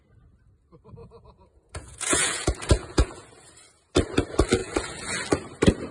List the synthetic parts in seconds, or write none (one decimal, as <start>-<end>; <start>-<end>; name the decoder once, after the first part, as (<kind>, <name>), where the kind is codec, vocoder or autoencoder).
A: 1.0-3.3 (vocoder, Vocos); 4.6-5.1